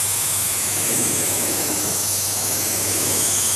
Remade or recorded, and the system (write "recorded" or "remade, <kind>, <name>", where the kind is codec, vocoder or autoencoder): remade, autoencoder, DAC-VAE